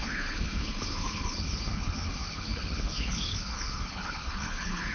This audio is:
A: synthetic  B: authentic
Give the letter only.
A